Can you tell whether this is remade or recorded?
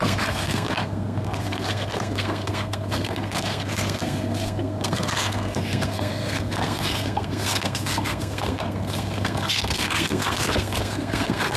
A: remade